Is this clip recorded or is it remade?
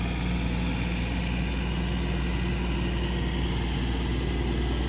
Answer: recorded